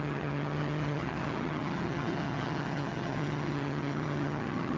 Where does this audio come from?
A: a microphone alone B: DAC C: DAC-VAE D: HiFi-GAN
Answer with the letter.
D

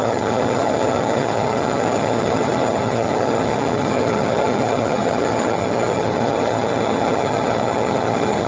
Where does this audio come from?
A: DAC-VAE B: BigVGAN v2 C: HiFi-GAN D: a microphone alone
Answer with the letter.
C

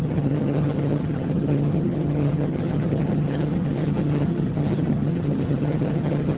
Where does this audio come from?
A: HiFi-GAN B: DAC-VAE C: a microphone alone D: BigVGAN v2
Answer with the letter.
A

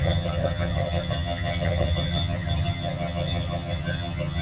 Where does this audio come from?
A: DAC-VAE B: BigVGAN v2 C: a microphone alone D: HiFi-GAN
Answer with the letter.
D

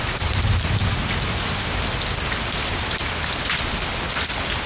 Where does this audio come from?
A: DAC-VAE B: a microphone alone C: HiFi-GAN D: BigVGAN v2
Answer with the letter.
B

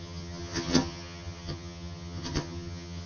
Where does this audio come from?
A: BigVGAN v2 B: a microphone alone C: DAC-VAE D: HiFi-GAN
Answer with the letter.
D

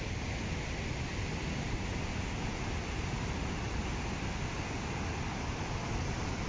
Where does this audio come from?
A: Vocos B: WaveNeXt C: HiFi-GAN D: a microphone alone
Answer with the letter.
D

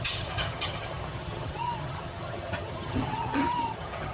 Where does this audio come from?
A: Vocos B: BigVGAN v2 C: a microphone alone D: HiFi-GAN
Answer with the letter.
D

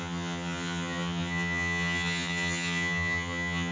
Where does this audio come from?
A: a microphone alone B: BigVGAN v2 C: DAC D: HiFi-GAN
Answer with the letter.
D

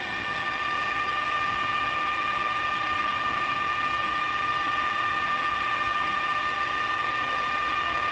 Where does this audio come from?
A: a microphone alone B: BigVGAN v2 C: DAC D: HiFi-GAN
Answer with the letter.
D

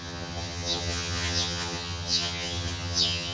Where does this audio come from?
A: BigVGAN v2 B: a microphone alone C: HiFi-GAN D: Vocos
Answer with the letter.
C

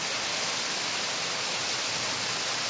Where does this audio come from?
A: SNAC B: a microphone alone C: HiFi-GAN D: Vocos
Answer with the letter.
B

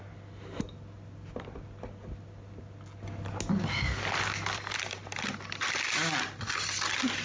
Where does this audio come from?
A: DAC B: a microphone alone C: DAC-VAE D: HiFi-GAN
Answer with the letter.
B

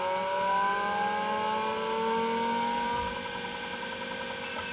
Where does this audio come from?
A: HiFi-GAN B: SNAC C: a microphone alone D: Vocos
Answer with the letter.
C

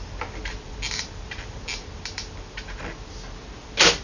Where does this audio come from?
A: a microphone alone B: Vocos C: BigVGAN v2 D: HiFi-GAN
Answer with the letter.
A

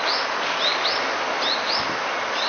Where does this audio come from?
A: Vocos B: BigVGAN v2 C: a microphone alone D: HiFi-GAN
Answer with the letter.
C